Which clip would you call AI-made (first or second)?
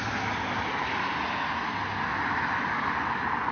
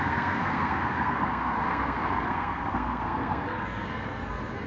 second